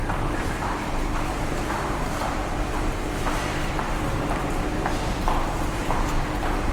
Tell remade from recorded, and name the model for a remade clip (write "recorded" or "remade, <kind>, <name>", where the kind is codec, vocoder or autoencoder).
remade, vocoder, BigVGAN v2